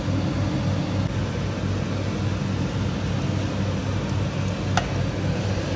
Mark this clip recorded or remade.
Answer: recorded